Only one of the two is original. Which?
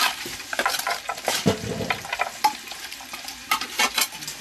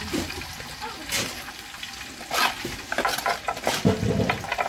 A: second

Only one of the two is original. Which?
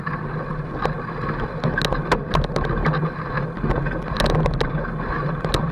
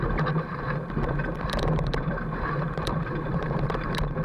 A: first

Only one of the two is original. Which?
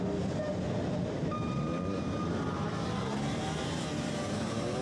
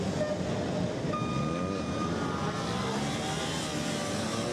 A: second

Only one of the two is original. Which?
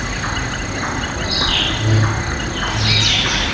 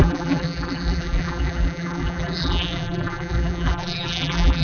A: first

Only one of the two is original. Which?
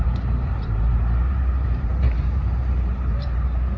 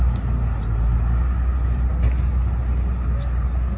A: second